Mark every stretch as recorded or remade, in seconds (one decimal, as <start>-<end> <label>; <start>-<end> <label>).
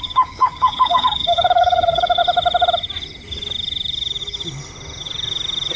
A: 0.0-2.2 remade; 2.2-5.8 recorded